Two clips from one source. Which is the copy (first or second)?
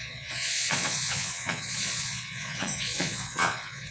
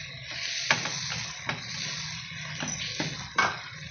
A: first